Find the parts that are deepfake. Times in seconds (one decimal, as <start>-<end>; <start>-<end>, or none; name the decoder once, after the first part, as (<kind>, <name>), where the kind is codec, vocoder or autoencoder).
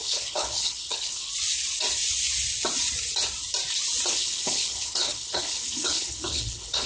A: 0.0-1.3 (codec, HILCodec); 4.1-6.9